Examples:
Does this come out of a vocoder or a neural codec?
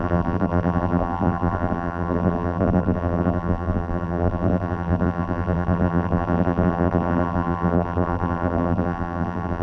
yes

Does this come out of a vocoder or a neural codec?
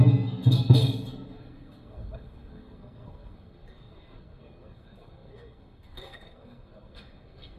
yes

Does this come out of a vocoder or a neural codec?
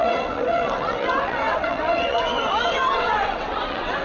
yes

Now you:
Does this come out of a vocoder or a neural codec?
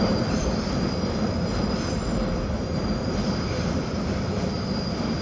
yes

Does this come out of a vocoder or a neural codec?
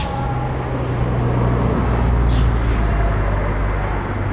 no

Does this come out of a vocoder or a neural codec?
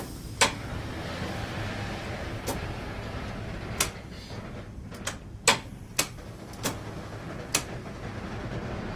no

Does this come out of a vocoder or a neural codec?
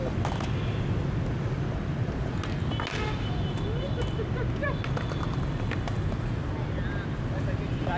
no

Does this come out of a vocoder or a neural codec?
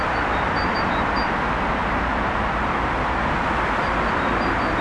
no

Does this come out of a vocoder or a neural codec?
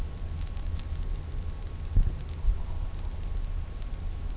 no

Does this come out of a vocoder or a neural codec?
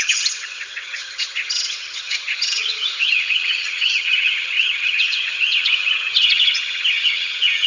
yes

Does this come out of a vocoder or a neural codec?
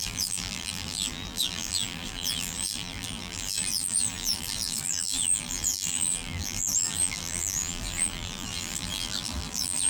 yes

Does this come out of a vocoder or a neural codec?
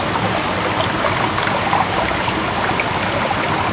no